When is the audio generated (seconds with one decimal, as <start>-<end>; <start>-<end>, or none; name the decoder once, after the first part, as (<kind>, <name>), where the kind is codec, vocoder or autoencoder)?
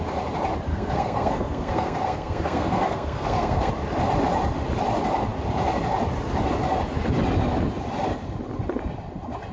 0.7-3.7 (codec, SNAC)